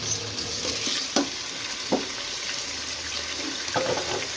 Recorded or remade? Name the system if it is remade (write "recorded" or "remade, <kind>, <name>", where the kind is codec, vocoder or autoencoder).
recorded